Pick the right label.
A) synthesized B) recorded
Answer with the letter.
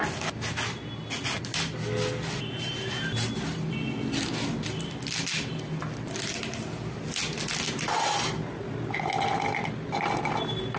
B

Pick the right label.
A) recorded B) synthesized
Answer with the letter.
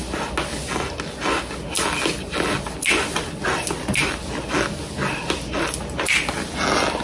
A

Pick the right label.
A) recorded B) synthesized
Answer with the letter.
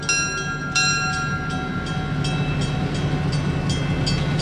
A